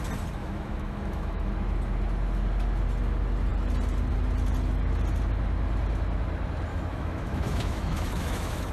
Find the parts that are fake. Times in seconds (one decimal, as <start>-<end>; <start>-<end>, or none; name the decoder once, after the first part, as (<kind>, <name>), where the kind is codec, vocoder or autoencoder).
0.4-1.5 (autoencoder, DAC-VAE); 6.7-8.7